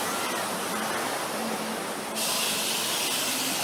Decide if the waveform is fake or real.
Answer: real